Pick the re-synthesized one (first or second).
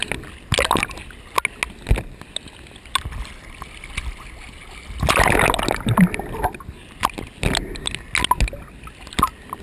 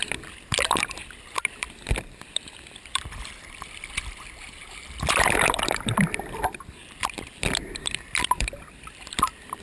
second